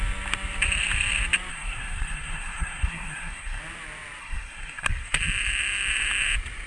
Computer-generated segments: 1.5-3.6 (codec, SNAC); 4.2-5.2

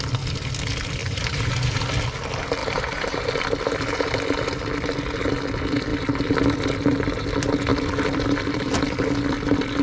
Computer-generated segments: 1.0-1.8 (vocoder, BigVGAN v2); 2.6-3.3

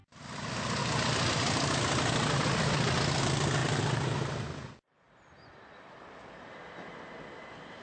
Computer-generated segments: 3.6-6.5 (vocoder, BigVGAN v2)

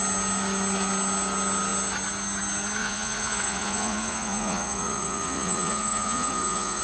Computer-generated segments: 2.8-6.8 (vocoder, Vocos)

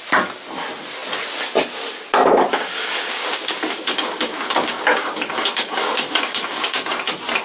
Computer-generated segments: 2.5-6.9 (codec, DAC)

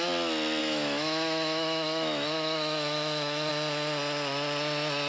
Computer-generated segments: 0.6-3.5 (autoencoder, DAC-VAE)

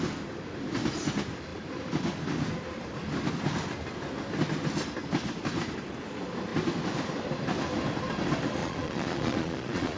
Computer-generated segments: 8.6-10.0 (vocoder, Vocos)

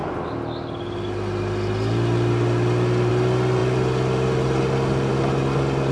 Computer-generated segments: none